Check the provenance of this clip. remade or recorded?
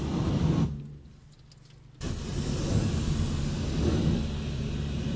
recorded